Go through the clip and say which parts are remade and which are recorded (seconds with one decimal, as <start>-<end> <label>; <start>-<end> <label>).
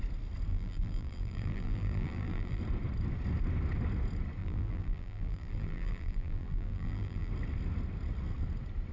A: 0.0-0.5 recorded; 0.5-2.6 remade; 2.6-4.4 recorded; 4.4-7.3 remade; 7.3-8.9 recorded